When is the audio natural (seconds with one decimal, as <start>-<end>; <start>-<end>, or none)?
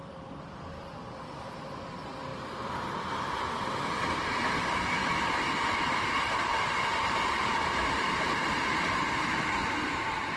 0.0-6.5; 9.1-10.4